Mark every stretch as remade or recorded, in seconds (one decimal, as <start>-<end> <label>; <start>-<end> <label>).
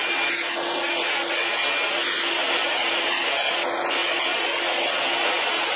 0.0-5.8 recorded